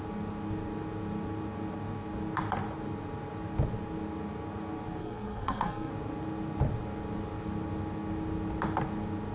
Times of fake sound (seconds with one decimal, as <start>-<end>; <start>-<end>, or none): 5.0-5.9

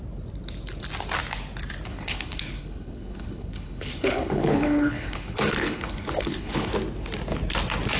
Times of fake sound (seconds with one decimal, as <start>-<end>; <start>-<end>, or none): 1.9-6.7

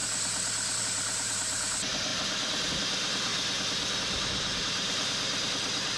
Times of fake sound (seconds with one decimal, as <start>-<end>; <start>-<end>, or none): 0.8-3.3; 4.0-6.0

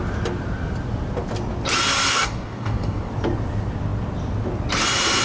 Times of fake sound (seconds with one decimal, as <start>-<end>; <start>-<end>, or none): 2.1-3.1

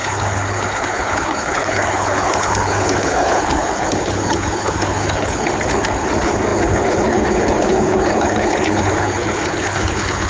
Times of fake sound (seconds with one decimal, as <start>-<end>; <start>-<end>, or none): 0.0-10.3

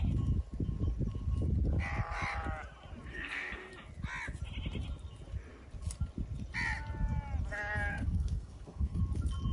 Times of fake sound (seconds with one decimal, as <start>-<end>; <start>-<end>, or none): 3.1-3.7; 7.9-9.0

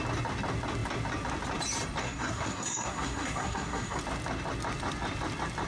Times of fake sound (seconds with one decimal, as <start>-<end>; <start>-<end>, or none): 2.0-4.0